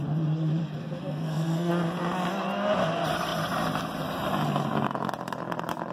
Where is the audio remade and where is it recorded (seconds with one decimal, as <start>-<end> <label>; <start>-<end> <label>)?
0.0-0.6 recorded; 0.6-1.7 remade; 1.7-5.9 recorded